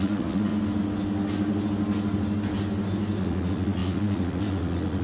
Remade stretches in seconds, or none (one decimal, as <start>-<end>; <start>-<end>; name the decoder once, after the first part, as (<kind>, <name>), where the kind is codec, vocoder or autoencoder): 0.0-0.5 (vocoder, Vocos); 3.2-5.0